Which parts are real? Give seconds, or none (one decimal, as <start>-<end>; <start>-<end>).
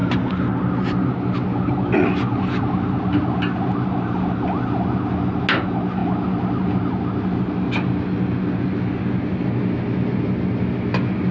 0.0-11.3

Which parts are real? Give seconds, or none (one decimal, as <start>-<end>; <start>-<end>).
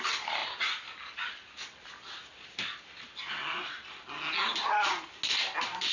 0.0-5.9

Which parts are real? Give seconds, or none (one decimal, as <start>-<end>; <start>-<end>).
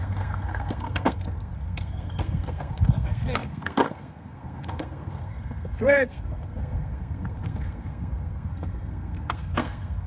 none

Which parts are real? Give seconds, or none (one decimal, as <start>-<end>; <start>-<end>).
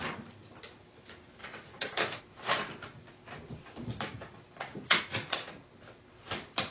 0.0-1.4; 2.2-4.7; 5.5-6.7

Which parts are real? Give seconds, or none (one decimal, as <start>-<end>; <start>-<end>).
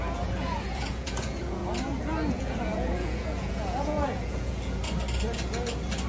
1.6-2.3; 4.8-6.1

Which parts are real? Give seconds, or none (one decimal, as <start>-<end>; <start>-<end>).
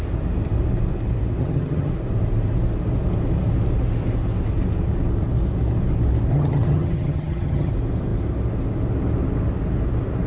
0.0-1.4; 1.9-6.3; 7.7-10.3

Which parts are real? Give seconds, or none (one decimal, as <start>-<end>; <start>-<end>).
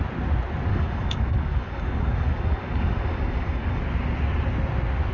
0.0-0.7; 3.8-5.1